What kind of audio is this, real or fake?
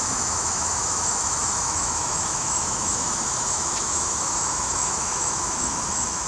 fake